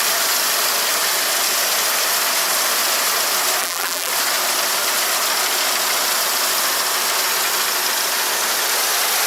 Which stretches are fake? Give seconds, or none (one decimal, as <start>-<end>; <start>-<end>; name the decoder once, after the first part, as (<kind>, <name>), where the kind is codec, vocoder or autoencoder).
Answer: 3.6-4.1 (vocoder, BigVGAN v2)